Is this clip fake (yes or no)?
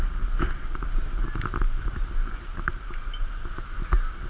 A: no